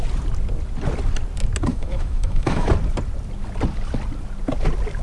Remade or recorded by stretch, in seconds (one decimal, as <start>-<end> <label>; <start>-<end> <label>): 0.0-1.7 recorded; 1.7-2.7 remade; 2.7-5.0 recorded